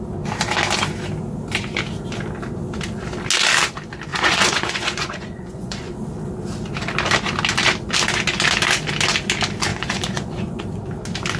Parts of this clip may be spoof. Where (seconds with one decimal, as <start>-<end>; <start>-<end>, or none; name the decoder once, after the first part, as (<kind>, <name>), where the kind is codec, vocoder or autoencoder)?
4.1-5.9 (vocoder, Vocos); 9.7-10.6